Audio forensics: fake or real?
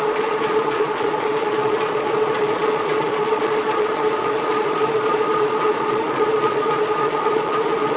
fake